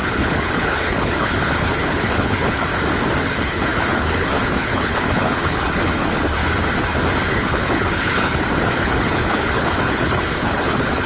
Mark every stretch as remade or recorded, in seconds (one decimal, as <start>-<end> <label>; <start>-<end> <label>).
0.0-2.7 remade; 2.7-3.2 recorded; 3.2-6.4 remade; 6.4-7.3 recorded; 7.3-11.1 remade